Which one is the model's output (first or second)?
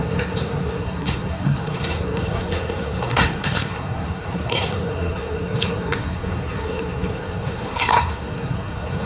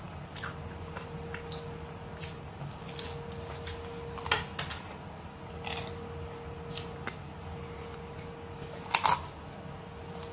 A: first